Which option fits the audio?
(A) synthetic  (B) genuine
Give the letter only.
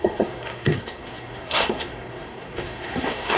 A